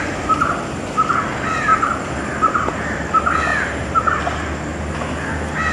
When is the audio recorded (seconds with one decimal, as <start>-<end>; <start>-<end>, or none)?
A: 0.0-1.7; 2.7-3.5; 4.2-5.7